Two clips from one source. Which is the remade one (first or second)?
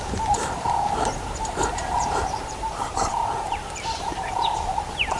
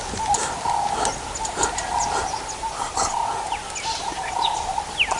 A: first